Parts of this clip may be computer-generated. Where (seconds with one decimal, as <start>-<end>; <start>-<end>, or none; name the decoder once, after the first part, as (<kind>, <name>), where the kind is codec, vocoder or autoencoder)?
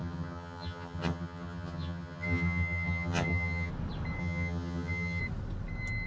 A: 0.0-3.7 (vocoder, HiFi-GAN); 4.2-5.2